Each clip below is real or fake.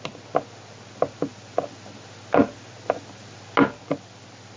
real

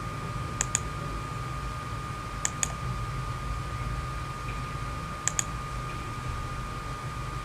real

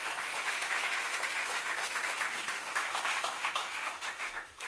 fake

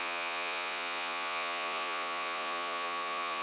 fake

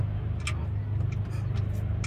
real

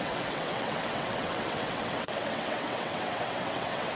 fake